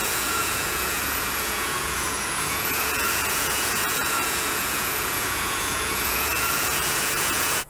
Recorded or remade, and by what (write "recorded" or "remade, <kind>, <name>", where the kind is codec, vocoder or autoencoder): remade, vocoder, Vocos